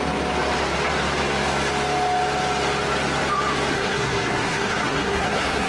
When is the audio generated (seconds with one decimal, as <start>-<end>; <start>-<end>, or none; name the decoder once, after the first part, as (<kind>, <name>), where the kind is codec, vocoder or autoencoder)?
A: 3.7-5.7 (codec, SNAC)

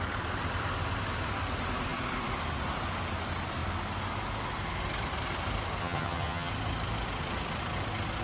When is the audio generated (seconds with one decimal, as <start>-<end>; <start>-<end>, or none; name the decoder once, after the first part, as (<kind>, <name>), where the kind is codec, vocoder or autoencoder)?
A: 5.8-6.5 (vocoder, HiFi-GAN)